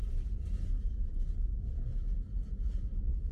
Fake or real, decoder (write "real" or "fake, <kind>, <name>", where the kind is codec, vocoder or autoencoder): real